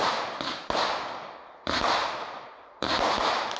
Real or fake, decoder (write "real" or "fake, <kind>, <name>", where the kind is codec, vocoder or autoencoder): real